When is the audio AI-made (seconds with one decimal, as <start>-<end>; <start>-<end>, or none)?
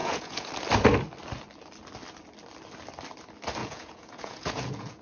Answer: 0.0-0.5; 3.6-5.0